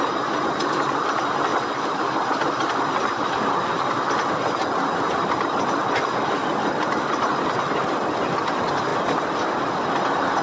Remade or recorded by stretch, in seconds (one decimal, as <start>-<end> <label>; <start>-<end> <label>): 0.0-10.4 recorded